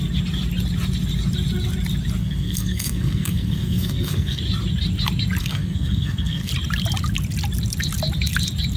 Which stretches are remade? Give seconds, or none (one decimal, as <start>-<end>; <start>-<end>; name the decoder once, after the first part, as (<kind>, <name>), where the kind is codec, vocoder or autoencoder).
2.2-4.4 (codec, SNAC); 5.4-6.5